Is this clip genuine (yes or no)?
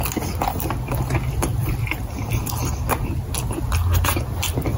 yes